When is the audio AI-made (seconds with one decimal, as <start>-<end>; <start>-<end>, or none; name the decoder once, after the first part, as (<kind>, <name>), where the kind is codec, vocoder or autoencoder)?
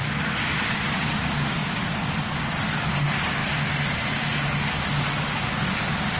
0.0-1.0 (vocoder, BigVGAN v2); 3.4-4.0